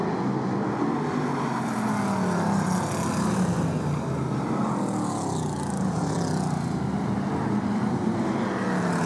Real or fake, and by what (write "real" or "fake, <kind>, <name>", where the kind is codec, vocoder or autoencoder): real